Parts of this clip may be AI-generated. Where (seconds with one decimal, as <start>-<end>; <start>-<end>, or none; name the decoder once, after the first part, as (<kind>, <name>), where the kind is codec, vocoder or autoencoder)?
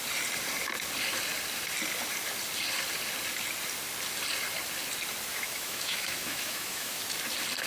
5.3-7.0 (autoencoder, DAC-VAE)